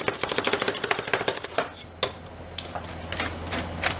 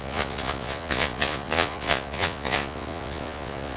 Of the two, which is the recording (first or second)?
first